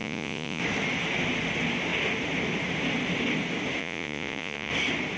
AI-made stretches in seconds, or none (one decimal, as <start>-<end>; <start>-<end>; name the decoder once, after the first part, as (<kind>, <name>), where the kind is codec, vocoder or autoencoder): 0.0-0.6 (vocoder, Vocos); 3.8-4.7